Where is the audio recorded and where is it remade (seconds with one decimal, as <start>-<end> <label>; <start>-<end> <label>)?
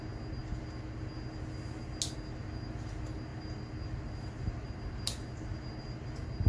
0.0-6.5 recorded